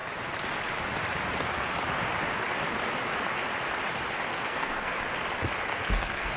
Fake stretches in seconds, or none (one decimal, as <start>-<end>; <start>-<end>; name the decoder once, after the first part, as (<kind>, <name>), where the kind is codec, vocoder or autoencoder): 4.3-5.0 (codec, SNAC); 5.7-6.4